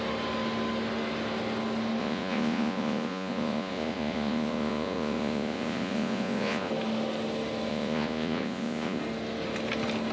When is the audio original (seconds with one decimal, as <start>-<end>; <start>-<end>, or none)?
0.0-2.0; 6.7-7.7; 9.0-10.1